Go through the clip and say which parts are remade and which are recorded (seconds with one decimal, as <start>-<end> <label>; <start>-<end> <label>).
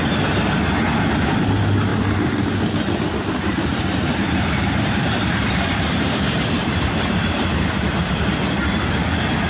0.0-3.7 recorded; 3.7-8.3 remade; 8.3-9.5 recorded